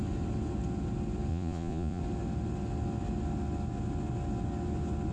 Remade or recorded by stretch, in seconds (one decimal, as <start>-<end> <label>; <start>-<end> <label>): 0.0-1.3 recorded; 1.3-2.0 remade; 2.0-5.1 recorded